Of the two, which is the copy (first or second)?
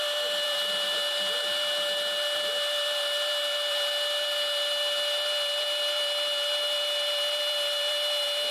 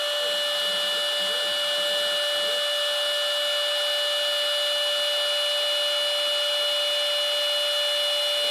first